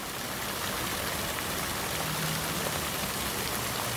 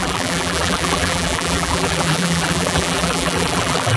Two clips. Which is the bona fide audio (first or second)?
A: first